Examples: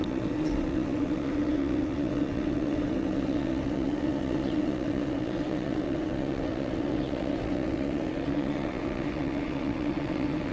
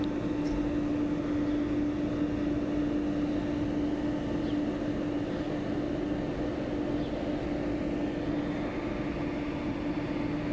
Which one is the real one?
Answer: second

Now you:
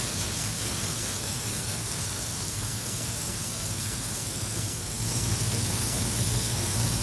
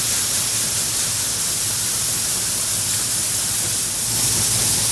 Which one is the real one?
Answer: second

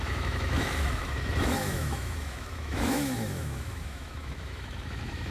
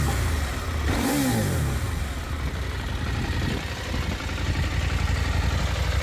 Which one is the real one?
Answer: second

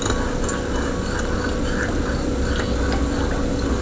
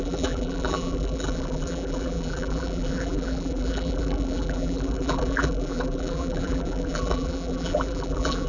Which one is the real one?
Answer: first